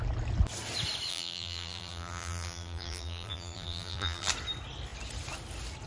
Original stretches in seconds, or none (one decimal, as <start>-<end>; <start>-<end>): 0.0-1.1; 4.3-5.9